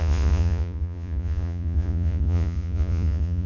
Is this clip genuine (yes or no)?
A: no